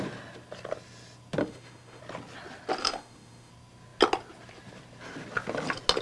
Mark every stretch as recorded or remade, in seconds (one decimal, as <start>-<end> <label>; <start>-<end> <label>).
0.0-1.4 recorded; 1.4-2.0 remade; 2.0-2.8 recorded; 2.8-3.5 remade; 3.5-6.0 recorded